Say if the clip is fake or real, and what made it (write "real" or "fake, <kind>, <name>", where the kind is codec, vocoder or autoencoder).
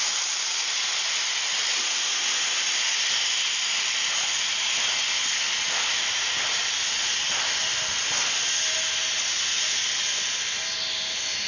real